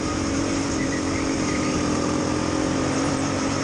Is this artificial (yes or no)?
yes